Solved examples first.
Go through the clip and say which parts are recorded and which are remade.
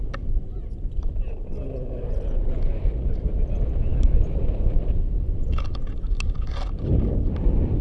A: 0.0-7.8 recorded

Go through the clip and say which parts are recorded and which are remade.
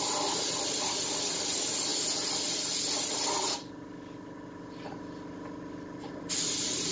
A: 0.0-6.9 recorded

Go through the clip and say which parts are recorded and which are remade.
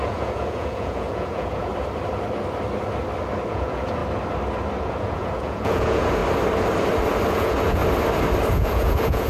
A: 0.0-1.7 remade; 1.7-3.5 recorded; 3.5-4.0 remade; 4.0-4.8 recorded; 4.8-6.2 remade; 6.2-7.3 recorded; 7.3-7.8 remade; 7.8-8.5 recorded; 8.5-9.3 remade